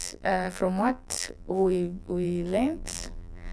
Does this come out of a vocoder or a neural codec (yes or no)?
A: yes